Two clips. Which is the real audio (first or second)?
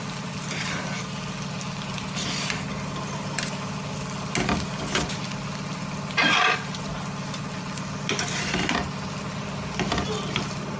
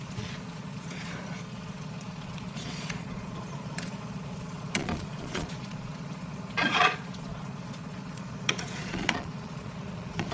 first